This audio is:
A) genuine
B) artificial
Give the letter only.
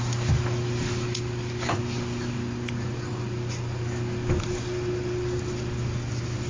A